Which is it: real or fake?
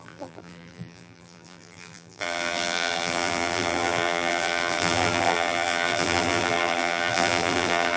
fake